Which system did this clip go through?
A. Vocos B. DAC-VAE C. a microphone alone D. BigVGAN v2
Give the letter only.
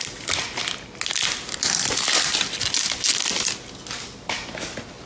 C